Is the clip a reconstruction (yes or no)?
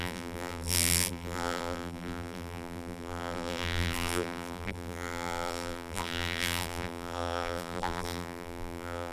yes